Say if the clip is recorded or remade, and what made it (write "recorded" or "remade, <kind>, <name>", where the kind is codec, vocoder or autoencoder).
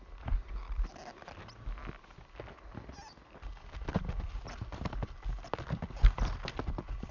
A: recorded